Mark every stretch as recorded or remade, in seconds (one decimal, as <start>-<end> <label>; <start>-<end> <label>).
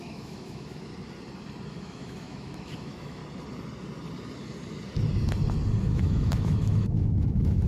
0.0-0.9 remade; 0.9-1.7 recorded; 1.7-3.2 remade; 3.2-5.8 recorded; 5.8-7.7 remade